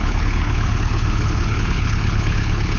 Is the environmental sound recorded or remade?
remade